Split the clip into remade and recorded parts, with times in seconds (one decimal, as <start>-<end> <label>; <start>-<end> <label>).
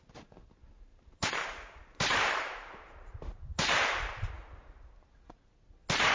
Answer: 0.0-0.9 recorded; 0.9-4.3 remade; 4.3-6.1 recorded